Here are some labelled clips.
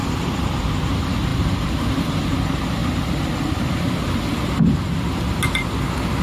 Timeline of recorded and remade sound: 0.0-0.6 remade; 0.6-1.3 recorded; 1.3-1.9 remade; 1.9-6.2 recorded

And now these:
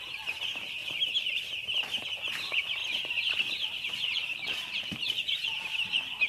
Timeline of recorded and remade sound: 0.0-2.8 recorded; 2.8-3.7 remade; 3.7-4.2 recorded; 4.2-5.4 remade; 5.4-6.3 recorded

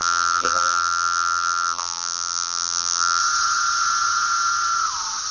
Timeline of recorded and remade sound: 0.0-3.2 remade; 3.2-5.3 recorded

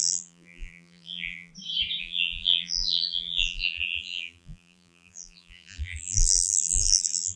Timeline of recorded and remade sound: 0.0-1.5 remade; 1.5-2.0 recorded; 2.0-7.4 remade

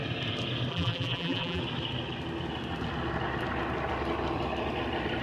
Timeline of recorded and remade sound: 0.0-0.7 recorded; 0.7-1.6 remade; 1.6-5.2 recorded

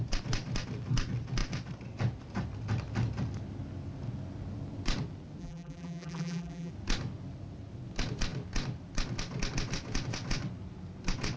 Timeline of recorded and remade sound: 0.0-5.4 recorded; 5.4-6.7 remade; 6.7-11.4 recorded

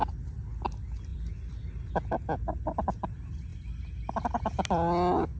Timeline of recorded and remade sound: 0.0-1.1 recorded; 1.1-1.9 remade; 1.9-5.4 recorded

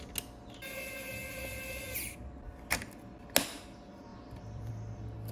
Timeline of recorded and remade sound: 0.0-1.2 recorded; 1.2-2.2 remade; 2.2-4.1 recorded; 4.1-4.7 remade; 4.7-5.3 recorded